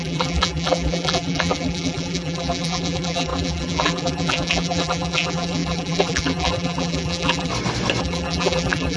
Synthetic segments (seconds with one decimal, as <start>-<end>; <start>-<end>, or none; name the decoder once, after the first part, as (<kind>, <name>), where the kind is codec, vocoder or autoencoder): 0.0-7.5 (vocoder, BigVGAN v2); 8.0-9.0